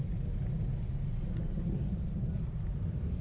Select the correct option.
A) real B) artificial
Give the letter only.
A